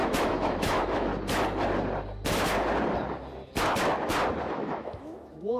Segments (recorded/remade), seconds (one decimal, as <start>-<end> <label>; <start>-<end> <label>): 0.0-1.1 remade; 1.1-4.5 recorded; 4.5-5.6 remade